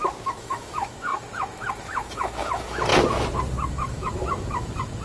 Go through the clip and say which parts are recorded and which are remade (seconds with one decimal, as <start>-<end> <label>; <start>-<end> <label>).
0.0-2.9 remade; 2.9-3.7 recorded; 3.7-5.0 remade